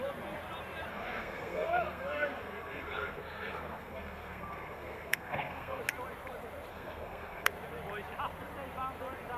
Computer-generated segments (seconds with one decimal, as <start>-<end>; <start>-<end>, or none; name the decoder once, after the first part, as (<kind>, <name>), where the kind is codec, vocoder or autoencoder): 0.9-5.8 (codec, SNAC); 6.7-7.5